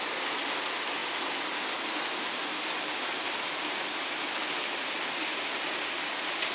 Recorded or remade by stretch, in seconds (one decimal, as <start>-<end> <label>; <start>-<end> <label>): 0.0-6.5 recorded